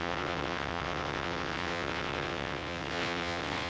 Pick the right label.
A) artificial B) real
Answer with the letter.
A